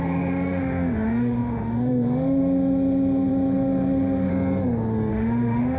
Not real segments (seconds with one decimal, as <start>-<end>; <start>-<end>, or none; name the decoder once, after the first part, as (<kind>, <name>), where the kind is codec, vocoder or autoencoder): 0.0-4.3 (autoencoder, DAC-VAE); 5.1-5.8